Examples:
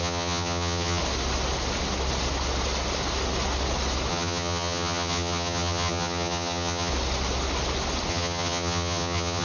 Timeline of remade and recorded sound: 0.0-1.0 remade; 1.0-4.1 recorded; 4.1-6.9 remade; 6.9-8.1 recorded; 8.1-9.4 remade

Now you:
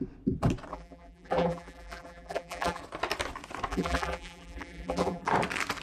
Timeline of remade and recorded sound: 0.0-0.7 recorded; 0.7-2.8 remade; 2.8-3.7 recorded; 3.7-5.3 remade; 5.3-5.8 recorded

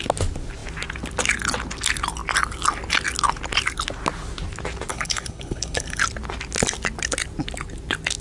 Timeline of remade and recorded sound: 0.0-4.9 recorded; 4.9-6.0 remade; 6.0-8.2 recorded

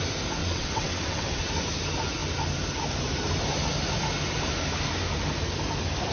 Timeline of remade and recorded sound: 0.0-0.4 recorded; 0.4-1.4 remade; 1.4-6.1 recorded

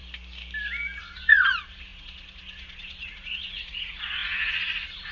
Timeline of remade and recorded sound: 0.0-1.0 recorded; 1.0-5.1 remade

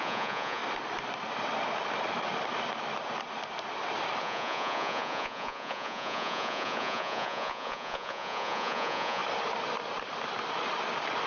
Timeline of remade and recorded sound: 0.0-0.6 remade; 0.6-4.2 recorded; 4.2-9.2 remade; 9.2-11.3 recorded